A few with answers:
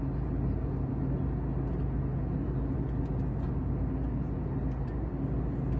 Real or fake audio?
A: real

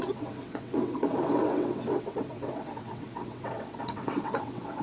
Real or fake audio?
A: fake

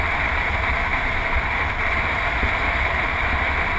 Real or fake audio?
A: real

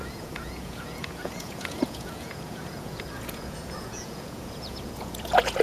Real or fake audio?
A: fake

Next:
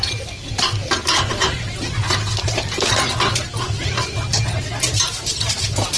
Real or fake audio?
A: real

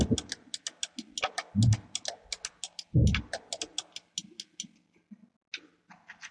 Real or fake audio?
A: real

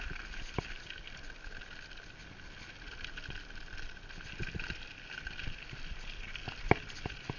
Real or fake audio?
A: real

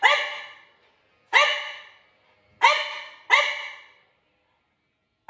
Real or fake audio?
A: real